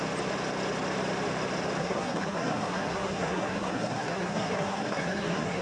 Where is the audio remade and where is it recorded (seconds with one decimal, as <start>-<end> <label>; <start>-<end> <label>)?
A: 0.0-1.8 recorded; 1.8-5.6 remade